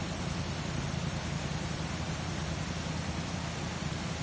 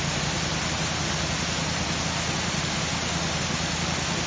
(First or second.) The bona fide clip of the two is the second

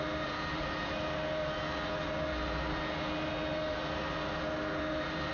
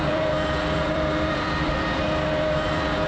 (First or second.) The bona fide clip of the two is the first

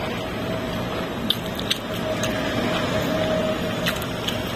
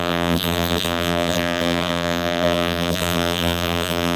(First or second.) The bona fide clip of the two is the first